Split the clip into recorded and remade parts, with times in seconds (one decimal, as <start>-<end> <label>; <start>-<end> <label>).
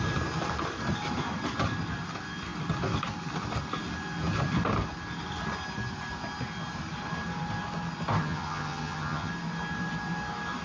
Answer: 0.0-8.2 recorded; 8.2-9.3 remade; 9.3-10.6 recorded